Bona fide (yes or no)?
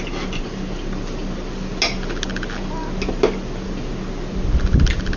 yes